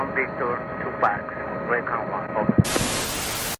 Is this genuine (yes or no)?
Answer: yes